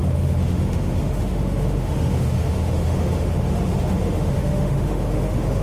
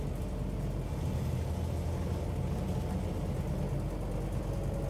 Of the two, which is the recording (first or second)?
second